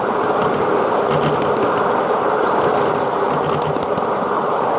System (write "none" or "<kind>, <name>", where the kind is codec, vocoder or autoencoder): none